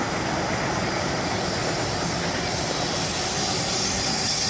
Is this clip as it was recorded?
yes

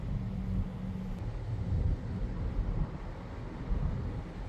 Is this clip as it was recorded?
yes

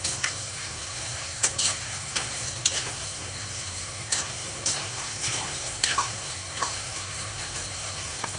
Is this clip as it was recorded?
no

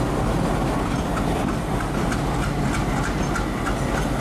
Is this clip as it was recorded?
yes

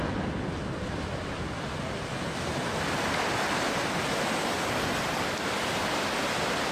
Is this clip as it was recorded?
yes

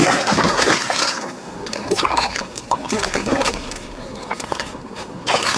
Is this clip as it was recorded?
no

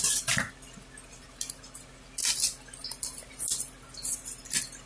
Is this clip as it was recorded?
yes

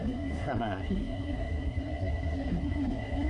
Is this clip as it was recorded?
no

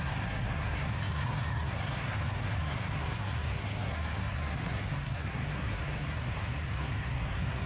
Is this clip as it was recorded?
no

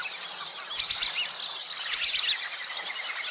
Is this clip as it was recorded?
yes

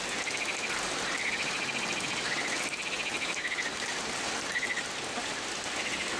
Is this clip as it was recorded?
yes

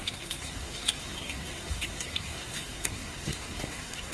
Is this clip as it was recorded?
no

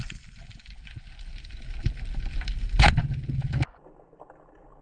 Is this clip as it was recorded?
yes